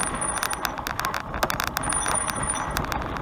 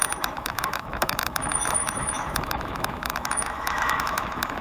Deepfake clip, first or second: second